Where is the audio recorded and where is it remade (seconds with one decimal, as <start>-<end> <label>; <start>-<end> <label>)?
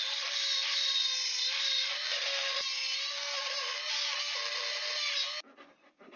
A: 0.0-6.2 recorded